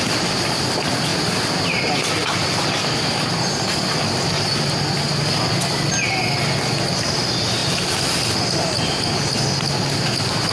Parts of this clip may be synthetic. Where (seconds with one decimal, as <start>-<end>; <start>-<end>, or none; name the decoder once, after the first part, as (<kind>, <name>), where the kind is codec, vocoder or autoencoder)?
none